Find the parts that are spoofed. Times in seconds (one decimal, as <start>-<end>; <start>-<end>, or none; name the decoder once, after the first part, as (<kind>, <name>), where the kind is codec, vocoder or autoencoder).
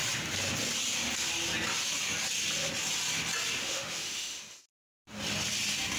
3.6-4.7 (autoencoder, DAC-VAE)